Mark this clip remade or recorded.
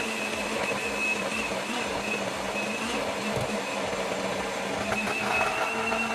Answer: recorded